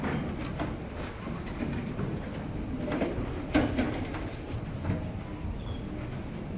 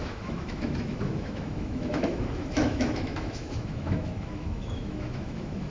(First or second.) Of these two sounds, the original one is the first